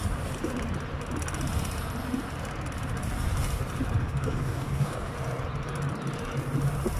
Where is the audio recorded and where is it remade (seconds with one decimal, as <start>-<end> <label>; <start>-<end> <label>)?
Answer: 0.0-4.0 recorded; 4.0-5.1 remade; 5.1-7.0 recorded